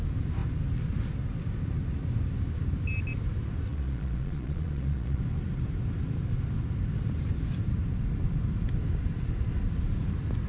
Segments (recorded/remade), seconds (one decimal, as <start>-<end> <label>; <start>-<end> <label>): 0.0-3.7 recorded; 3.7-5.2 remade; 5.2-10.5 recorded